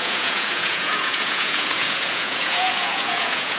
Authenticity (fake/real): fake